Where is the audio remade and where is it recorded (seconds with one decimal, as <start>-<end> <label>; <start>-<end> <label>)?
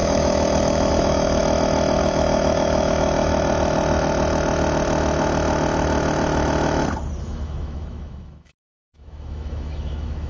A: 0.0-1.4 remade; 1.4-2.0 recorded; 2.0-3.3 remade; 3.3-7.2 recorded; 7.2-10.3 remade